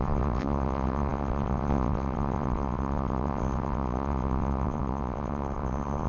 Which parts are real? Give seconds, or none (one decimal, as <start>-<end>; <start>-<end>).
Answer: none